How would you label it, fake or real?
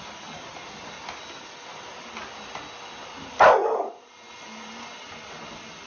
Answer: real